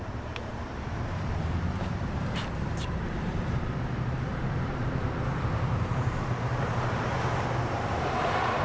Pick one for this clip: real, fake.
fake